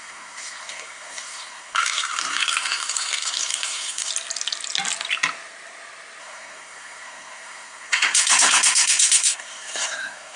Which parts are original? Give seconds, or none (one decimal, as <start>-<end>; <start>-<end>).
4.1-6.2